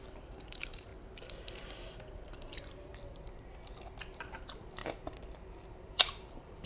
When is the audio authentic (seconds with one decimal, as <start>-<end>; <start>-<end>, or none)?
0.9-1.7; 2.9-4.2; 4.8-5.7